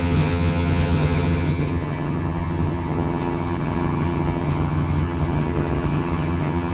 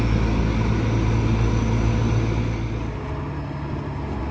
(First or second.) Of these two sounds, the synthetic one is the first